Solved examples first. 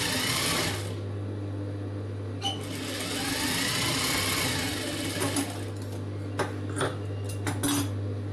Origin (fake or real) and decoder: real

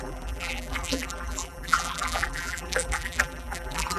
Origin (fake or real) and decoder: fake, vocoder, BigVGAN v2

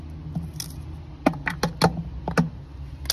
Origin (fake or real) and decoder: real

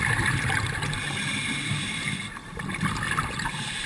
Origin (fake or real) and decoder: fake, vocoder, BigVGAN v2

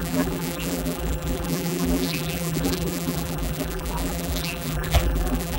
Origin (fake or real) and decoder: fake, vocoder, BigVGAN v2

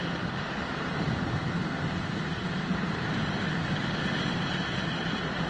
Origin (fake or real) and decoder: fake, vocoder, BigVGAN v2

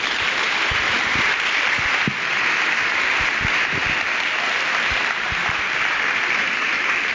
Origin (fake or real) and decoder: fake, vocoder, BigVGAN v2